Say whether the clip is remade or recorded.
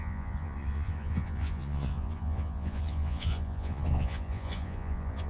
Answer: remade